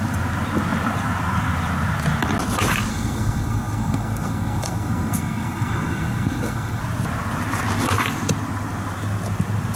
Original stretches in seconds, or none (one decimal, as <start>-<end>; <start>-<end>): 0.0-2.9; 6.8-9.8